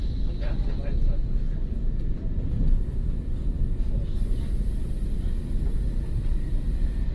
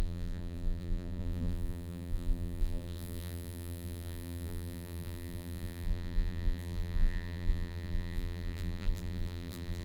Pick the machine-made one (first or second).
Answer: second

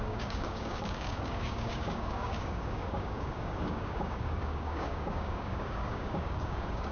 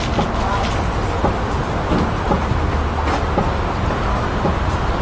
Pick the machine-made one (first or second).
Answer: first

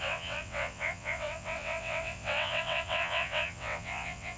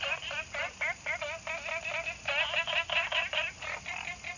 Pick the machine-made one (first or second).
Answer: first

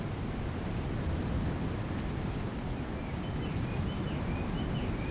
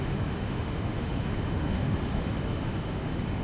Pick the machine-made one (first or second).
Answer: second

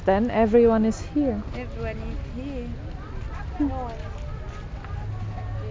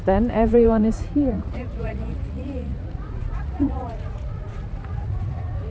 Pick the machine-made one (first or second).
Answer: second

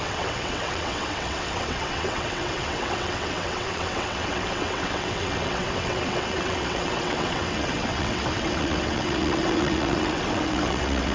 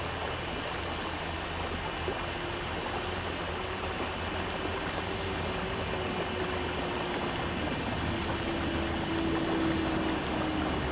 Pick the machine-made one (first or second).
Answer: first